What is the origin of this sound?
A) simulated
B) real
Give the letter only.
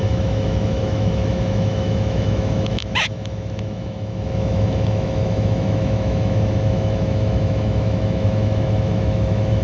A